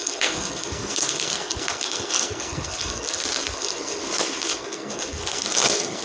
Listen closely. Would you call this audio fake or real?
fake